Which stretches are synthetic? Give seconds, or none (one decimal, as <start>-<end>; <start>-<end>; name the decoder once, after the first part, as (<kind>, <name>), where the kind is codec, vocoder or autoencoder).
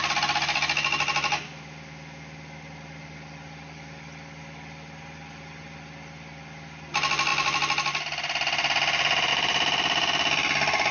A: 7.3-9.3 (vocoder, BigVGAN v2)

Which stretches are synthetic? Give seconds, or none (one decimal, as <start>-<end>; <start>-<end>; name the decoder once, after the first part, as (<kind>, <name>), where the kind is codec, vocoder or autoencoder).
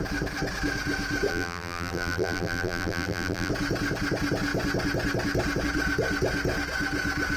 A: 1.3-3.5 (vocoder, BigVGAN v2)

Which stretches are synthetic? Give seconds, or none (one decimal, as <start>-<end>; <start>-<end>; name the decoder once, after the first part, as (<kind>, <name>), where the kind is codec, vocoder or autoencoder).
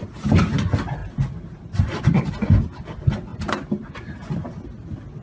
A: 1.0-2.0 (vocoder, BigVGAN v2); 3.3-4.4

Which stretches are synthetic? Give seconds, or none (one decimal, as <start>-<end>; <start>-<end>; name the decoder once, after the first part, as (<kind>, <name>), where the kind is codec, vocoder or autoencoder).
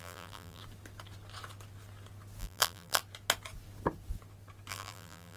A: 0.0-0.6 (vocoder, BigVGAN v2); 2.4-3.0; 4.7-5.4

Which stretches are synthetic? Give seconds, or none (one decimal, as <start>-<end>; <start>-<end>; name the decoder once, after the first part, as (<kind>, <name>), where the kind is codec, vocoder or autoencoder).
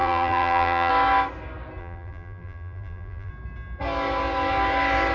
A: 0.0-0.9 (vocoder, BigVGAN v2); 1.8-3.3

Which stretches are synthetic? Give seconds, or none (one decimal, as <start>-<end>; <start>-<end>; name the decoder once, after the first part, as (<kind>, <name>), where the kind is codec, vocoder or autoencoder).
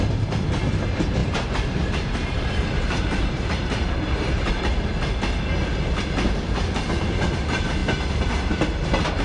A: 1.2-4.5 (vocoder, BigVGAN v2)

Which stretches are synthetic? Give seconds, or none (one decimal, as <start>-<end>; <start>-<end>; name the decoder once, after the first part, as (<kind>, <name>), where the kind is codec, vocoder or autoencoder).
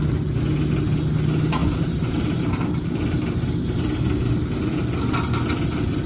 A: 1.6-2.4 (vocoder, BigVGAN v2)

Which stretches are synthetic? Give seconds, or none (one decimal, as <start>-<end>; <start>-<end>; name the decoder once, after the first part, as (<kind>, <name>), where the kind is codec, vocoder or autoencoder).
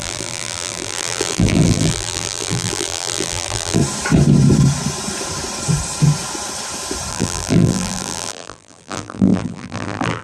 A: 0.0-3.8 (vocoder, BigVGAN v2); 7.1-10.2